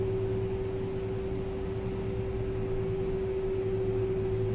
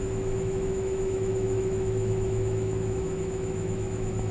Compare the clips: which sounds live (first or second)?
first